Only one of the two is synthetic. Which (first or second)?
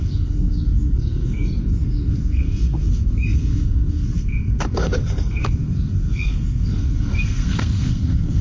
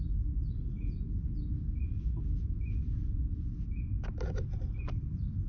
first